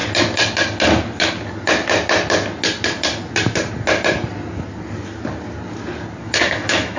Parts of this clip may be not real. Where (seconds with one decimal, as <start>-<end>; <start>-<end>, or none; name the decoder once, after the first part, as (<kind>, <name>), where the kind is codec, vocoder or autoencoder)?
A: 6.2-7.0 (autoencoder, DAC-VAE)